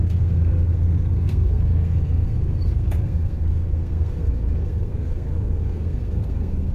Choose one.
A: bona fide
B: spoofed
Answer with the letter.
B